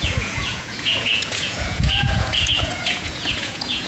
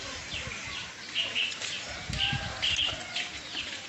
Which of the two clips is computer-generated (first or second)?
first